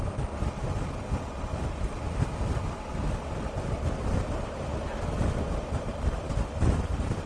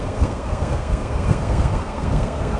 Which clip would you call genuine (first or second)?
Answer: first